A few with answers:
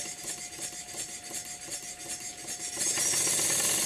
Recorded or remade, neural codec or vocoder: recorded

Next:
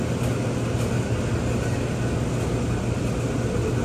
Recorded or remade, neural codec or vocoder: recorded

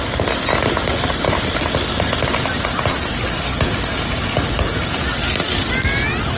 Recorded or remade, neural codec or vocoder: recorded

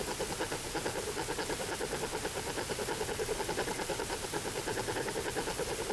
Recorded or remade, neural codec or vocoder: recorded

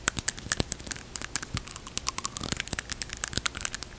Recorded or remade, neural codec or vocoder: recorded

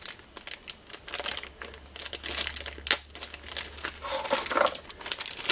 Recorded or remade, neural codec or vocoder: recorded